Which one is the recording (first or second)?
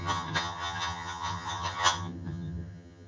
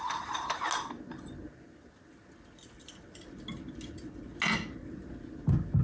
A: second